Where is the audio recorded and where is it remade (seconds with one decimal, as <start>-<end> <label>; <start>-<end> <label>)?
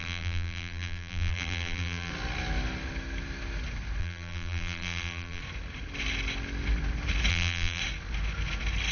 0.0-2.1 remade; 2.1-4.0 recorded; 4.0-5.4 remade; 5.4-7.3 recorded; 7.3-7.8 remade; 7.8-8.9 recorded